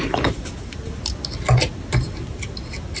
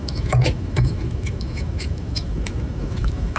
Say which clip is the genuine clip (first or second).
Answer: first